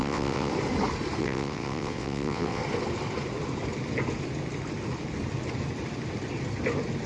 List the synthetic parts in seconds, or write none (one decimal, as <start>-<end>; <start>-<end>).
0.0-0.5; 1.2-2.6